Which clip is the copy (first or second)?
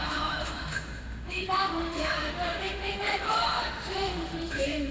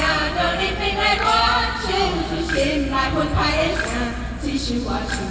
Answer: first